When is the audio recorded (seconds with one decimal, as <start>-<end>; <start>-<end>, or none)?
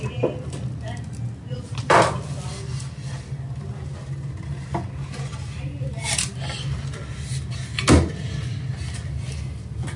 0.0-10.0